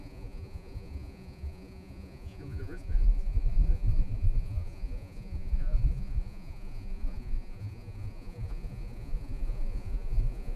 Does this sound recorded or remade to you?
remade